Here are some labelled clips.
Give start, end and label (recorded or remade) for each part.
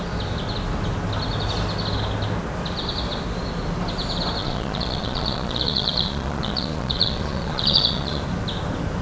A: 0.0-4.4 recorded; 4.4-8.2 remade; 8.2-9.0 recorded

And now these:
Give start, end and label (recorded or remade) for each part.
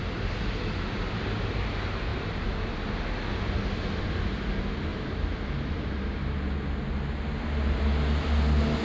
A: 0.0-2.1 recorded; 2.1-2.9 remade; 2.9-4.9 recorded; 4.9-5.4 remade; 5.4-8.8 recorded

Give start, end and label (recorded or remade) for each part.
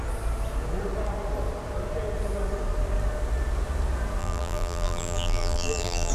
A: 0.0-4.2 recorded; 4.2-6.1 remade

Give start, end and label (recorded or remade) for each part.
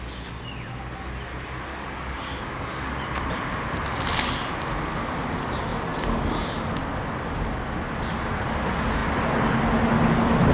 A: 0.0-1.7 recorded; 1.7-2.9 remade; 2.9-10.5 recorded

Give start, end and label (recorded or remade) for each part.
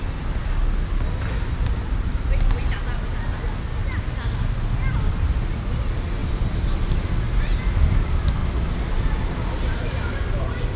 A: 0.0-10.8 recorded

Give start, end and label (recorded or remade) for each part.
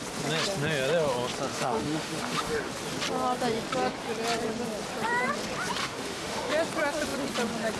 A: 0.0-1.5 recorded; 1.5-2.7 remade; 2.7-5.8 recorded; 5.8-6.5 remade; 6.5-7.8 recorded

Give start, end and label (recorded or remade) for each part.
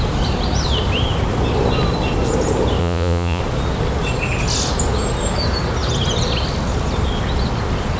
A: 0.0-2.8 recorded; 2.8-3.4 remade; 3.4-8.0 recorded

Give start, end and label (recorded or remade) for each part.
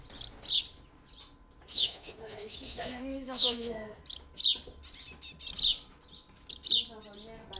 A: 0.0-1.7 recorded; 1.7-4.0 remade; 4.0-7.6 recorded